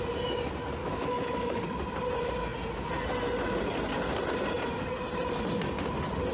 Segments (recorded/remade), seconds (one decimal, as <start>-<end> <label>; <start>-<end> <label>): 0.0-0.8 recorded; 0.8-1.6 remade; 1.6-6.3 recorded